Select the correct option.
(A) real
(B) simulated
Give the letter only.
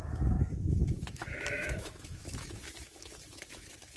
B